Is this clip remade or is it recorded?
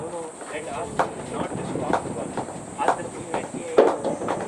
remade